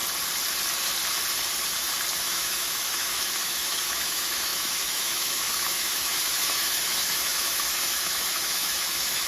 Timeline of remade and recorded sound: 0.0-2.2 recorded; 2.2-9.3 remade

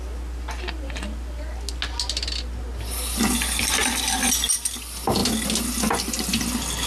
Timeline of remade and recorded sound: 0.0-6.9 recorded